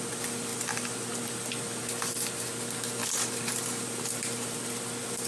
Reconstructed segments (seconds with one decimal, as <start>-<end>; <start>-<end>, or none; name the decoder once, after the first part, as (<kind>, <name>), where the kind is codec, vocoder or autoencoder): 0.5-1.5 (vocoder, BigVGAN v2); 3.0-4.7